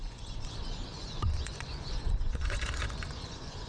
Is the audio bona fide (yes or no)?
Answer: no